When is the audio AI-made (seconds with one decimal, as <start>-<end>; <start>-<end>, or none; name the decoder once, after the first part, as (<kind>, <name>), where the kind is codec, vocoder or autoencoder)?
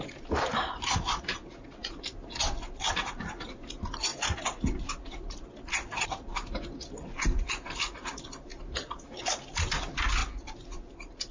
8.5-9.2 (vocoder, BigVGAN v2)